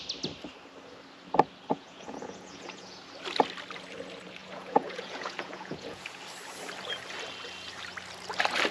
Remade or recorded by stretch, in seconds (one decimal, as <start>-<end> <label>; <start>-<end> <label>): 0.0-1.7 recorded; 1.7-3.0 remade; 3.0-4.4 recorded; 4.4-6.2 remade; 6.2-8.7 recorded